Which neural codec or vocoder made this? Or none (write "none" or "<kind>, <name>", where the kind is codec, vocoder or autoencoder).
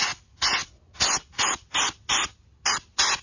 none